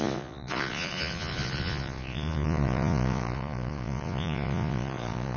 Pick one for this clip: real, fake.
fake